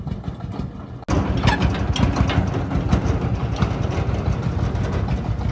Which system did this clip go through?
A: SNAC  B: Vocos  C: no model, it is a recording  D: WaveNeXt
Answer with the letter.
C